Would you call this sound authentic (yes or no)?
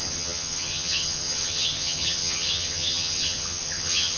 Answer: no